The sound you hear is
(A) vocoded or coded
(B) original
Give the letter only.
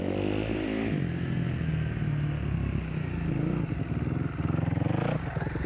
B